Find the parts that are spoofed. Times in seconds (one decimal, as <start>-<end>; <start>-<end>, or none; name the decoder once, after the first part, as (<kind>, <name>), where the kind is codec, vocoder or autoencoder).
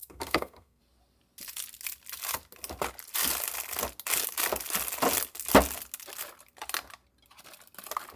0.0-0.8 (codec, SNAC)